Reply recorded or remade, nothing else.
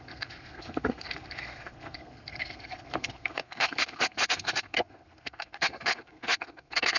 remade